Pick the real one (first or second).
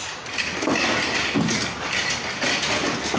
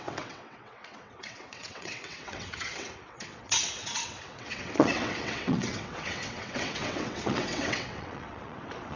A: first